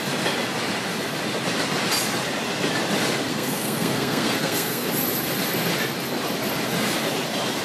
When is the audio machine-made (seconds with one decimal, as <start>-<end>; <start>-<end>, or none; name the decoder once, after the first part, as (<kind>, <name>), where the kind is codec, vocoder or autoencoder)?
3.3-4.9 (codec, SNAC)